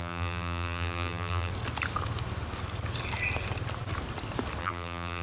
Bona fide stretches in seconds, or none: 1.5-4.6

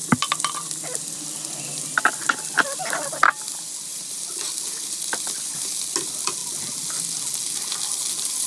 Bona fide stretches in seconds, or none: 0.0-8.5

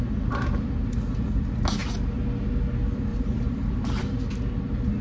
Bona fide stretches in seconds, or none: 0.0-3.1; 4.2-5.0

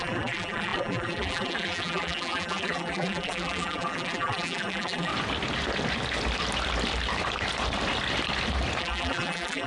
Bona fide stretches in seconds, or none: 5.1-8.8